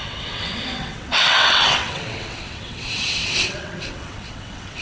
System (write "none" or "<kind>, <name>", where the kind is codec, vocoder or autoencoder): vocoder, WaveNeXt